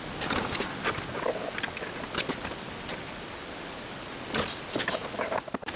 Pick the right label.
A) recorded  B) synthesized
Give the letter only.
A